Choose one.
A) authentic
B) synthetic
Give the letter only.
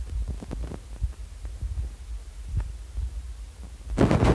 A